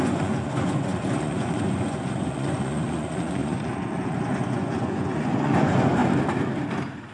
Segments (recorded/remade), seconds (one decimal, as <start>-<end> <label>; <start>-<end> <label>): 0.0-6.0 remade; 6.0-7.1 recorded